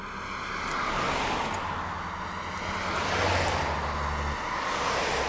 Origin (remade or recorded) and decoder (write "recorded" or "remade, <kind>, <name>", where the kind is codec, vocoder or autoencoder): recorded